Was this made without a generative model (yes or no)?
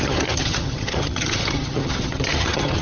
no